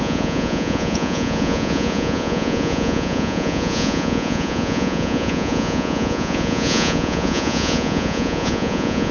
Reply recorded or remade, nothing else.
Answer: remade